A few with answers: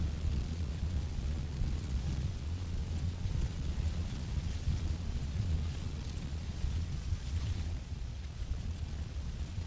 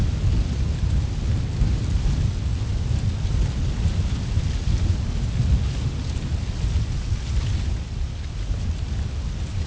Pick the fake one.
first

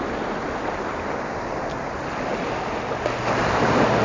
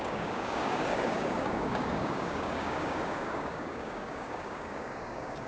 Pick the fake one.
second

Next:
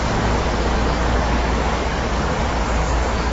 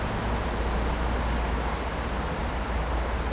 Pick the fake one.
first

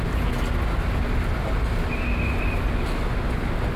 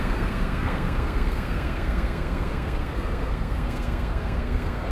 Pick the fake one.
second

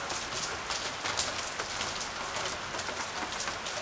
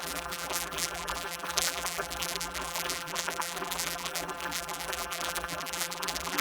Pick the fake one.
second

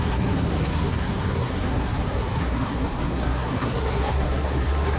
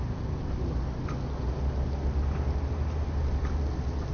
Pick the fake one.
first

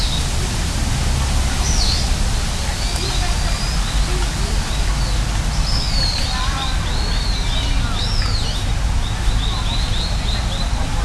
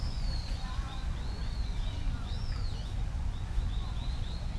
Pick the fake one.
second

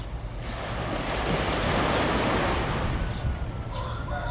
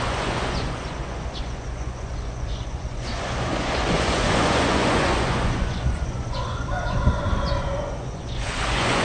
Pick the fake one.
second